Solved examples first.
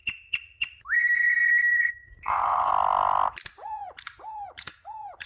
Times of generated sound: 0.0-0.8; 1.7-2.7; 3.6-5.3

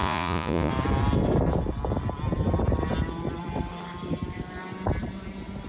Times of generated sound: 0.0-0.7

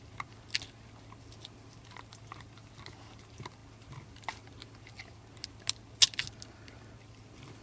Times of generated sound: none

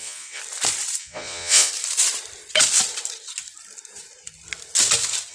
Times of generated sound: 0.0-0.4; 1.0-1.7

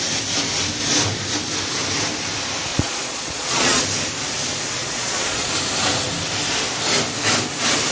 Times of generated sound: 2.7-3.8; 4.8-5.5

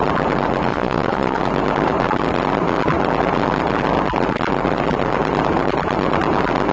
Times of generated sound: 0.7-1.4

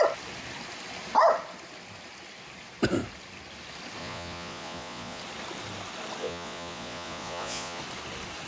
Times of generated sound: 4.0-5.2; 6.2-7.8